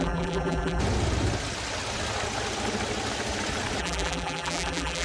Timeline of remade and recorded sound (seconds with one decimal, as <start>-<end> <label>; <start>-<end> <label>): 0.0-0.8 remade; 0.8-3.8 recorded; 3.8-5.0 remade